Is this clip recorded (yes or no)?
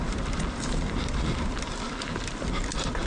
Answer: yes